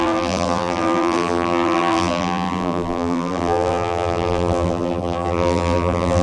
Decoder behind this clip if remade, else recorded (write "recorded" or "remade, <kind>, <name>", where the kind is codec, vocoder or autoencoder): remade, vocoder, BigVGAN v2